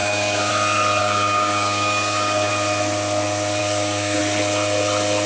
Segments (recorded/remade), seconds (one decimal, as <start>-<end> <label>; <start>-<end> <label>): 0.0-0.5 remade; 0.5-1.0 recorded; 1.0-2.5 remade; 2.5-3.6 recorded; 3.6-4.2 remade; 4.2-5.3 recorded